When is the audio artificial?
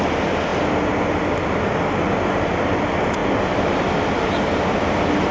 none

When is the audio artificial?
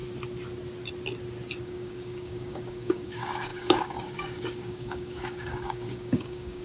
1.6-6.6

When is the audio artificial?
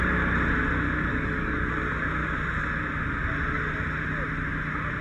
1.1-1.7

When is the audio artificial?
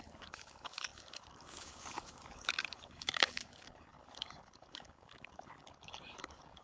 0.0-6.6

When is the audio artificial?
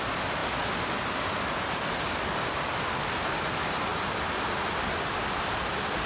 none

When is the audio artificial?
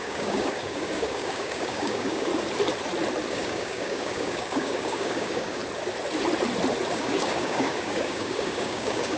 0.0-2.3; 3.3-5.6; 6.9-9.2